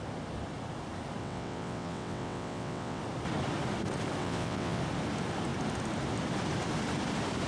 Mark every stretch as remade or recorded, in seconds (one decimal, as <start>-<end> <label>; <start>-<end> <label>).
0.0-1.2 recorded; 1.2-3.0 remade; 3.0-4.2 recorded; 4.2-4.8 remade; 4.8-7.5 recorded